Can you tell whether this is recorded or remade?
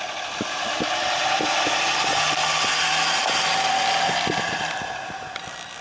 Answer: recorded